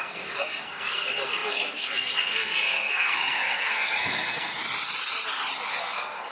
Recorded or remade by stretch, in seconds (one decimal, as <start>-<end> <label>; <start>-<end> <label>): 0.0-4.6 remade; 4.6-5.8 recorded; 5.8-6.3 remade